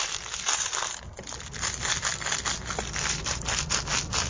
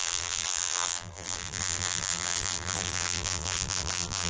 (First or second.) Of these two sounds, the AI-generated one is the second